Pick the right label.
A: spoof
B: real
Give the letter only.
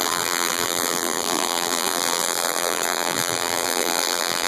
A